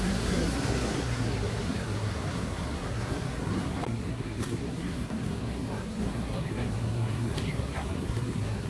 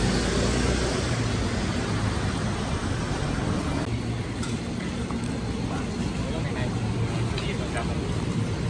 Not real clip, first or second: first